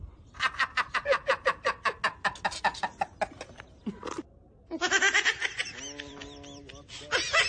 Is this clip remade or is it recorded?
recorded